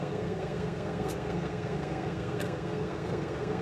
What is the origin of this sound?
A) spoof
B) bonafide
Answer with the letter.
A